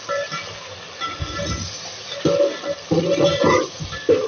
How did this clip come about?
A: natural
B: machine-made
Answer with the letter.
A